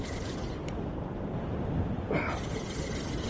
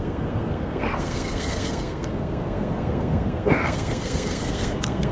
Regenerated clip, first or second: second